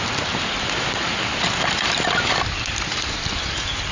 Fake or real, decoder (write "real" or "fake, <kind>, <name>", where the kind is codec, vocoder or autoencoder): real